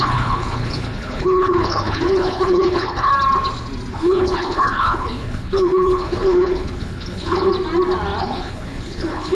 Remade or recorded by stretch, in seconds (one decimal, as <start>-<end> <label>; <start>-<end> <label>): 0.0-3.1 remade; 3.1-3.9 recorded; 3.9-7.5 remade; 7.5-8.2 recorded; 8.2-9.3 remade